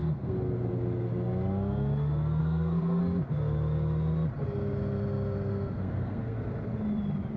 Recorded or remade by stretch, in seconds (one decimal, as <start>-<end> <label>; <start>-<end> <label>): 0.0-0.7 remade; 0.7-2.4 recorded; 2.4-3.0 remade; 3.0-5.5 recorded; 5.5-6.4 remade; 6.4-7.4 recorded